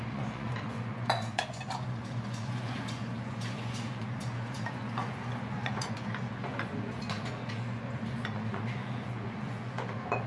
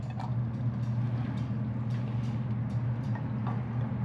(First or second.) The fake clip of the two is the first